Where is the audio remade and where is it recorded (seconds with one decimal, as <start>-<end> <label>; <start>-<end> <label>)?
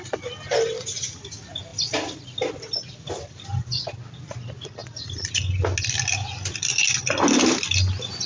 0.0-8.3 recorded